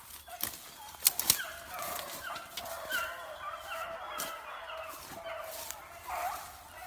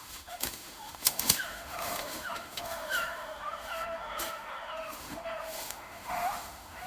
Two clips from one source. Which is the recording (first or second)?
first